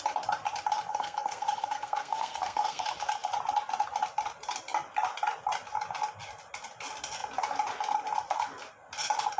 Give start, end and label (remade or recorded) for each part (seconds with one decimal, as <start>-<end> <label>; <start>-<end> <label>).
0.0-0.9 recorded; 0.9-2.8 remade; 2.8-9.4 recorded